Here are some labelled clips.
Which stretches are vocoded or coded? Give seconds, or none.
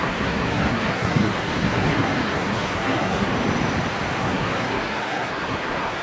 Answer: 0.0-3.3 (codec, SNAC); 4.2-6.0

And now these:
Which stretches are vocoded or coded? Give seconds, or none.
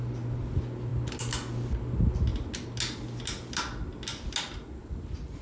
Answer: none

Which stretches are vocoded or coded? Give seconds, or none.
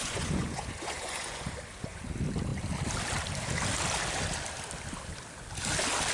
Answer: 0.0-2.0 (vocoder, Vocos)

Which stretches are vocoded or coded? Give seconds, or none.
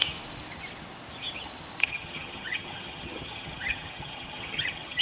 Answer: 1.8-5.0 (vocoder, HiFi-GAN)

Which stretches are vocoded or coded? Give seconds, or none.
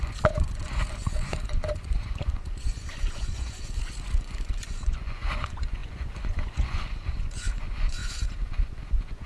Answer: 0.0-9.3 (vocoder, Vocos)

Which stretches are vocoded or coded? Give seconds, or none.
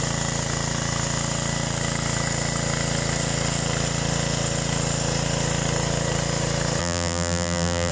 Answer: 6.8-7.9 (vocoder, BigVGAN v2)